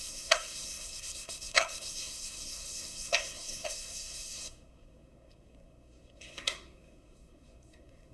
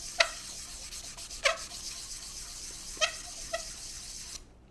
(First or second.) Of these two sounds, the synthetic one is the first